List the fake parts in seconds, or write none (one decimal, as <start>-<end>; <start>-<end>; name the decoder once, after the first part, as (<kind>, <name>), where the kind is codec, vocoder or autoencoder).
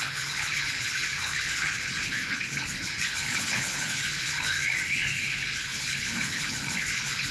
0.0-7.3 (codec, HILCodec)